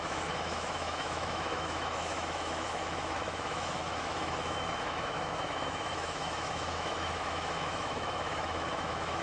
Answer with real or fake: fake